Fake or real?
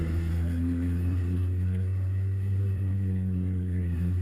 fake